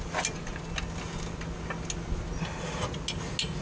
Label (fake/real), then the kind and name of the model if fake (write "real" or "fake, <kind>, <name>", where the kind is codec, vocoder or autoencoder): real